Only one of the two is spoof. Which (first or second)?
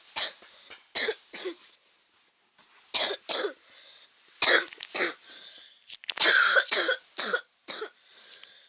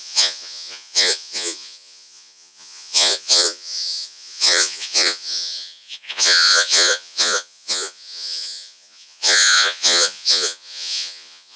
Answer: second